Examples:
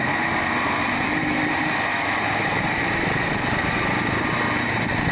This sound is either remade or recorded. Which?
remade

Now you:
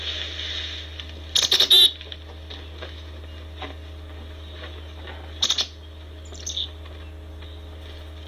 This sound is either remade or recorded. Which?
recorded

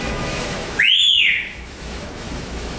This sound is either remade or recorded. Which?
remade